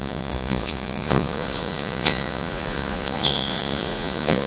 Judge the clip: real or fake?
fake